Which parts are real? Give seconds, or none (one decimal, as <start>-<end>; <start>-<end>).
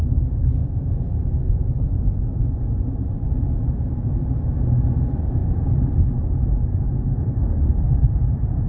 0.0-0.6; 3.3-5.4